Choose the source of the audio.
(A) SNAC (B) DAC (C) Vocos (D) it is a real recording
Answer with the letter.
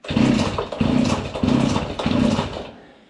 D